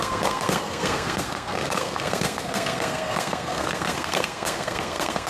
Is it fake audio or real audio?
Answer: fake